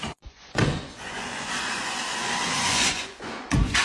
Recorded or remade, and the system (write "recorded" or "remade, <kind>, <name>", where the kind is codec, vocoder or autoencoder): remade, vocoder, Vocos